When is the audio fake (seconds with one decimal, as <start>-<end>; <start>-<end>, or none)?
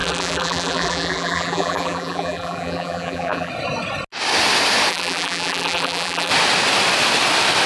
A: 0.0-3.5; 4.9-6.3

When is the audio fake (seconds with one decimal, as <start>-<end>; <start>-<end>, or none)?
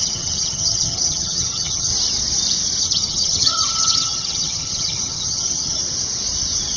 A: 0.0-1.9; 2.8-5.8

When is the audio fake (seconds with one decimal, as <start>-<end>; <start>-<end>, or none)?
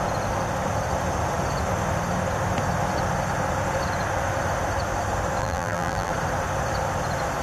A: 5.4-6.1